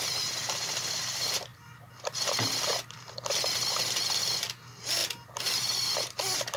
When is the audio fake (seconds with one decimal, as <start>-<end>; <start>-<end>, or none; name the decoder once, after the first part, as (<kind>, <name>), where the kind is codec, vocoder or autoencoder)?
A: none